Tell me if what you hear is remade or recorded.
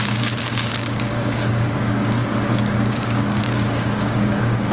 remade